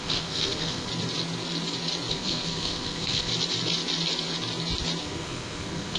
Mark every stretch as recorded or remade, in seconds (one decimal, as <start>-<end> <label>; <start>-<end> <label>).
0.0-0.9 remade; 0.9-2.1 recorded; 2.1-3.3 remade; 3.3-5.0 recorded; 5.0-6.0 remade